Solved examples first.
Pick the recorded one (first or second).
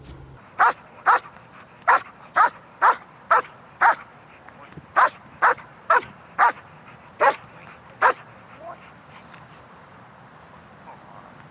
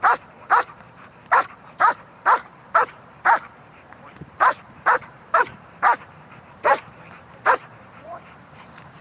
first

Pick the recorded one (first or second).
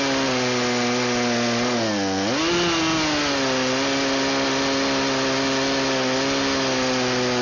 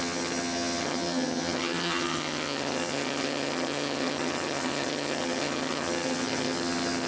first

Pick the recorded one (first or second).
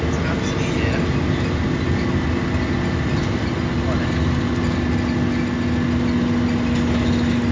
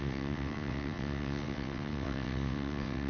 first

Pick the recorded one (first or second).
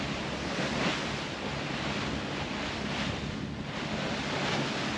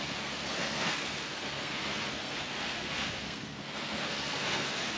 first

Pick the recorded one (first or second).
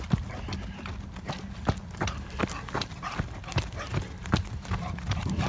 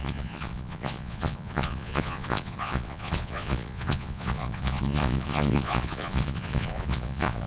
first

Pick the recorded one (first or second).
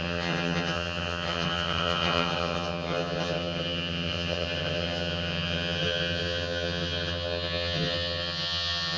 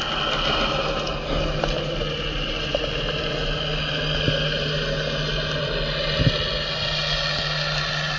second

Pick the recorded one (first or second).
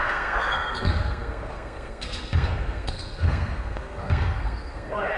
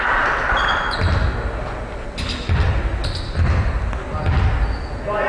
second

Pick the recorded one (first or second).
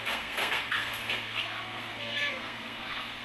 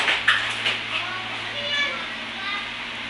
second